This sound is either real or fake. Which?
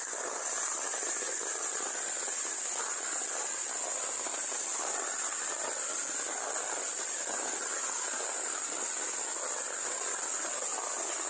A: real